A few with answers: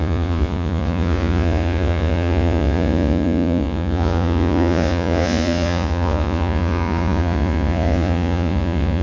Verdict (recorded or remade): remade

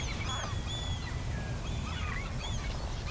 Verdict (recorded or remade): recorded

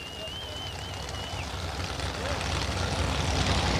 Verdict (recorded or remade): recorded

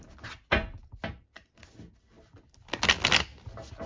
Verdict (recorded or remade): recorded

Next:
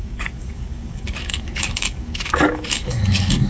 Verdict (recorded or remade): remade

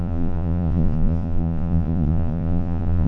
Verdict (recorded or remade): remade